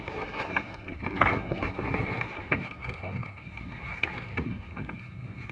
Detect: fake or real fake